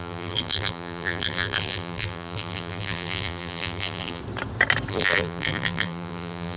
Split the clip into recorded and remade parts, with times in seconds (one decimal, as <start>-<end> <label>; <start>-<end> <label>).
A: 0.0-4.2 remade; 4.2-4.9 recorded; 4.9-6.6 remade